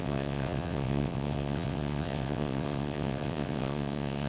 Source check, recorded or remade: remade